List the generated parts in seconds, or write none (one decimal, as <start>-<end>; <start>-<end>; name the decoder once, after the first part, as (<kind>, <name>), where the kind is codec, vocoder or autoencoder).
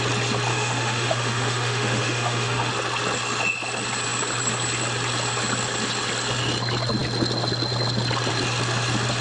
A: 0.5-2.7 (autoencoder, DAC-VAE)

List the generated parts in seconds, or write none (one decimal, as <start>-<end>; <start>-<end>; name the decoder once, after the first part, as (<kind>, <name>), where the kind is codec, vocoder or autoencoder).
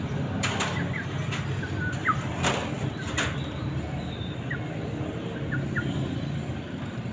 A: none